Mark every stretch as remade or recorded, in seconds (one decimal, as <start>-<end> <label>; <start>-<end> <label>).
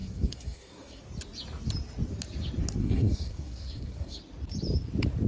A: 0.0-1.0 remade; 1.0-2.8 recorded; 2.8-4.2 remade; 4.2-5.3 recorded